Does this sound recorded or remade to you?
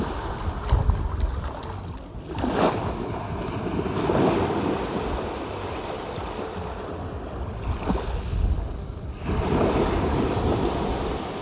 recorded